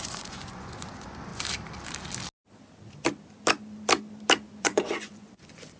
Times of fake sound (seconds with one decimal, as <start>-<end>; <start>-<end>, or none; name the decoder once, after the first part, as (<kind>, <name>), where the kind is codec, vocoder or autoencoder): 0.0-1.3 (vocoder, Vocos); 4.6-5.8